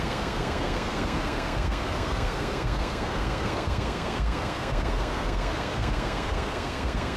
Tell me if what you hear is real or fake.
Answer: fake